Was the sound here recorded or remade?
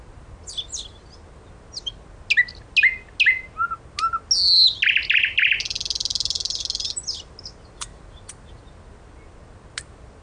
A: recorded